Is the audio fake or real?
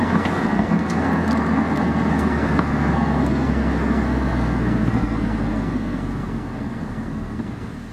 fake